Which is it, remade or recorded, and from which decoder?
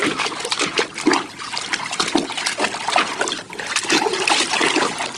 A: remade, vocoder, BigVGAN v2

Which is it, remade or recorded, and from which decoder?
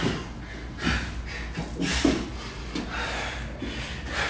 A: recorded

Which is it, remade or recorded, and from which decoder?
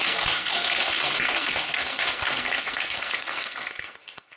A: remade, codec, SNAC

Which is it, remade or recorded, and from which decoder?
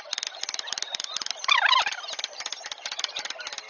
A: recorded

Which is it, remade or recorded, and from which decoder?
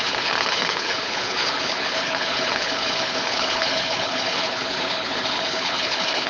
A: remade, codec, HILCodec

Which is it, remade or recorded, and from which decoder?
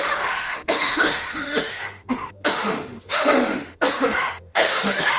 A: remade, autoencoder, DAC-VAE